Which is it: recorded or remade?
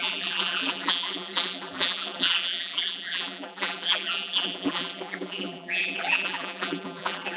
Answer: remade